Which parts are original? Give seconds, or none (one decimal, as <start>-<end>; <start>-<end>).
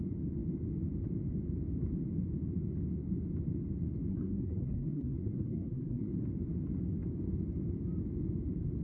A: 0.0-4.1; 6.1-8.8